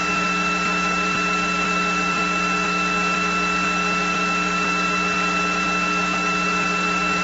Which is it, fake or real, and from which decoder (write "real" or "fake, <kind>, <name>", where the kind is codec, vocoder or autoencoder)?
fake, vocoder, BigVGAN v2